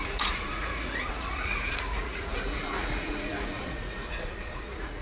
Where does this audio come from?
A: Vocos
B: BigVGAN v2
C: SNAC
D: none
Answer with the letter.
A